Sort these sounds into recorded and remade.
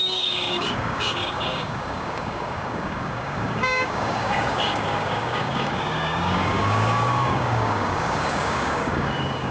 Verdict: remade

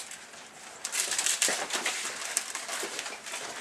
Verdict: remade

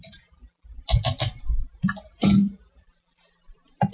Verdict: recorded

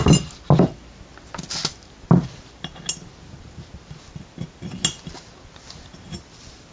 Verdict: recorded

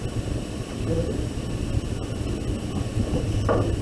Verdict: recorded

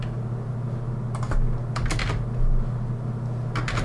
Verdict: recorded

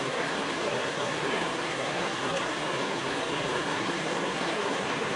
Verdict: remade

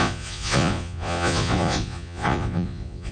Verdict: remade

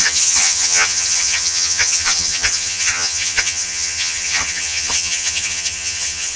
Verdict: remade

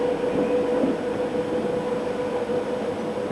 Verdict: recorded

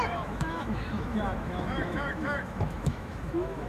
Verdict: remade